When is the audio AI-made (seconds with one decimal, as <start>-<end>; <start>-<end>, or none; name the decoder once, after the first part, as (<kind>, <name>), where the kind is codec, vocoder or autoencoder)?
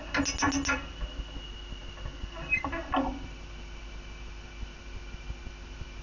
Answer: none